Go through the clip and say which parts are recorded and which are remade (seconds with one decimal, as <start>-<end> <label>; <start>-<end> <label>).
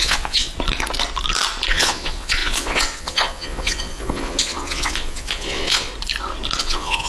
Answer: 0.0-0.5 remade; 0.5-1.7 recorded; 1.7-5.9 remade; 5.9-6.6 recorded; 6.6-7.1 remade